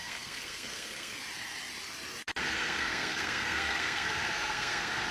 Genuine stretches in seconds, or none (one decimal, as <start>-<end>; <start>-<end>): 1.1-2.4